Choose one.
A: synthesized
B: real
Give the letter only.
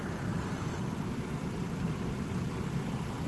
A